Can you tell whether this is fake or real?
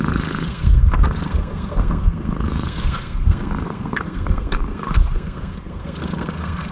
fake